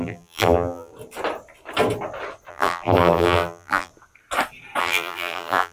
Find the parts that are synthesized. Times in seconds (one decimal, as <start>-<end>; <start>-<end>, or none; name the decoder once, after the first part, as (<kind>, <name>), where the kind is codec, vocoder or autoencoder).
0.0-0.9 (vocoder, BigVGAN v2); 2.5-3.9; 4.8-5.7